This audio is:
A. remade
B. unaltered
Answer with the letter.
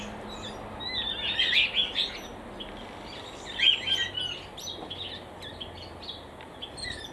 B